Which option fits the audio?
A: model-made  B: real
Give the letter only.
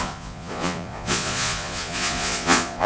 A